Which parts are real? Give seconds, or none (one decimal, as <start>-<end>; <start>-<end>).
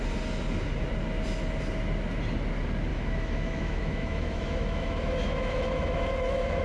0.0-2.9